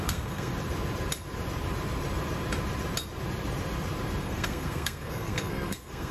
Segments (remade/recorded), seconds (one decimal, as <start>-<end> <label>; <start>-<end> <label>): 0.0-0.5 remade; 0.5-4.2 recorded; 4.2-6.1 remade